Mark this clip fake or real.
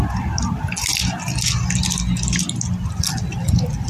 real